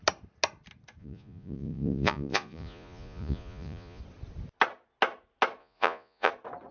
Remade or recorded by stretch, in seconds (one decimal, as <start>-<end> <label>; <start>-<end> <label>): 0.0-1.0 recorded; 1.0-4.0 remade; 4.0-5.6 recorded; 5.6-6.3 remade; 6.3-6.7 recorded